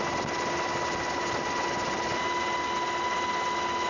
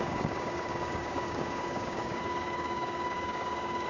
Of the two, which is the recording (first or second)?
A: first